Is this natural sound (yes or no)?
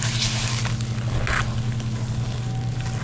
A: yes